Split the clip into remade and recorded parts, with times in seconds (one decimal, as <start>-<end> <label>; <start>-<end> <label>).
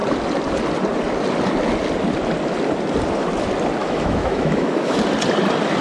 0.0-3.8 recorded; 3.8-5.0 remade; 5.0-5.8 recorded